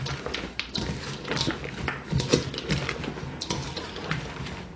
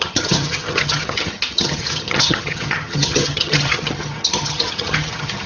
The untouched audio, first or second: first